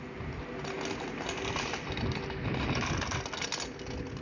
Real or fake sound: real